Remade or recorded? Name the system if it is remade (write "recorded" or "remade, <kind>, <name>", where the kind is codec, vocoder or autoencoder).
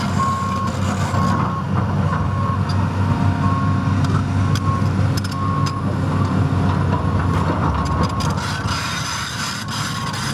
recorded